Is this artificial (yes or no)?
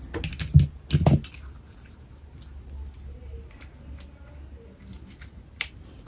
no